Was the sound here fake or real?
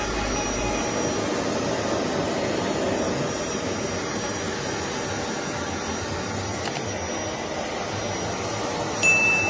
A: real